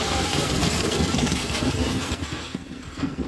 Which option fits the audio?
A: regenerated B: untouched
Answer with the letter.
A